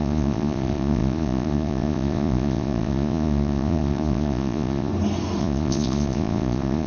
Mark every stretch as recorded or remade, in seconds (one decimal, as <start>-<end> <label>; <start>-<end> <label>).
0.0-4.9 remade; 4.9-5.4 recorded; 5.4-6.9 remade